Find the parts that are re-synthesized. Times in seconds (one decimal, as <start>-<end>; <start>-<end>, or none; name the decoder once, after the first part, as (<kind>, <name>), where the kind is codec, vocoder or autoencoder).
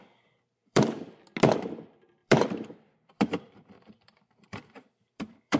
0.6-1.2 (vocoder, BigVGAN v2); 2.2-5.6